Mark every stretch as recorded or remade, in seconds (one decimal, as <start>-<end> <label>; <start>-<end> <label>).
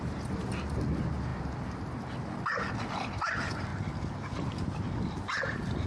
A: 0.0-5.9 recorded